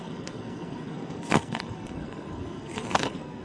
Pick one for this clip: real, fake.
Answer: fake